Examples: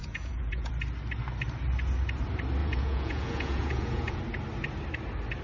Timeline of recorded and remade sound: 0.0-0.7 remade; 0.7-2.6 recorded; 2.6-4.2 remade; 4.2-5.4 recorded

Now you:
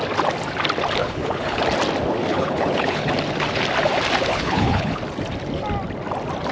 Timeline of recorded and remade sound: 0.0-1.0 recorded; 1.0-1.6 remade; 1.6-2.3 recorded; 2.3-3.1 remade; 3.1-4.3 recorded; 4.3-5.0 remade; 5.0-6.5 recorded

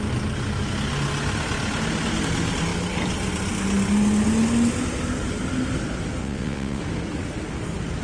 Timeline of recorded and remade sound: 0.0-6.2 recorded; 6.2-6.8 remade; 6.8-8.0 recorded

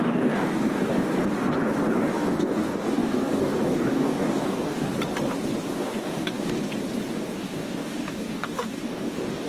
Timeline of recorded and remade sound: 0.0-1.1 remade; 1.1-1.9 recorded; 1.9-4.9 remade; 4.9-5.7 recorded; 5.7-6.6 remade; 6.6-7.1 recorded; 7.1-9.5 remade

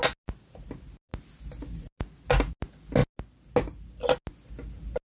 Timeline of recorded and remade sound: 0.0-5.0 recorded

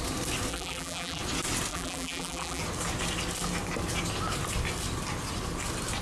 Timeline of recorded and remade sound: 0.0-0.5 recorded; 0.5-1.2 remade; 1.2-1.7 recorded; 1.7-2.6 remade; 2.6-6.0 recorded

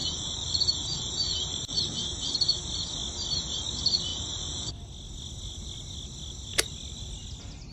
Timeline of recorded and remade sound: 0.0-2.3 remade; 2.3-4.1 recorded; 4.1-4.7 remade; 4.7-7.7 recorded